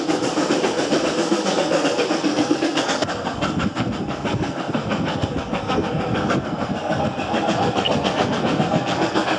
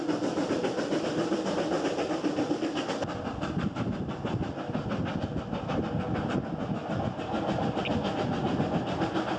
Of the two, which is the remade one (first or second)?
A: first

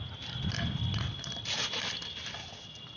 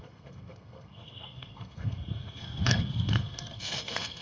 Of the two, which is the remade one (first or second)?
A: second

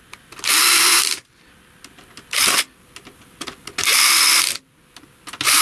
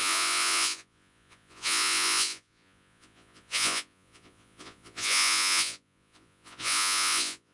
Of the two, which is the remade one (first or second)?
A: second